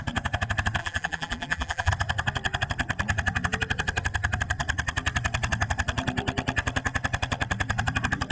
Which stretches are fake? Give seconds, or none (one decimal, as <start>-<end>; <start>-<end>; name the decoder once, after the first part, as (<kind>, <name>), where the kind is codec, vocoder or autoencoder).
0.8-1.9 (vocoder, BigVGAN v2)